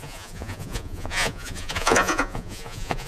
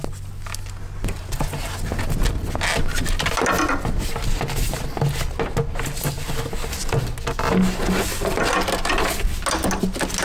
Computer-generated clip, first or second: first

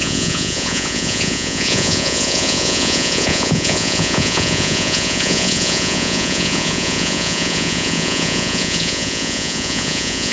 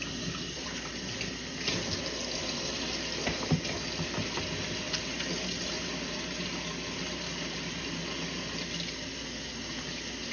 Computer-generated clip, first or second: first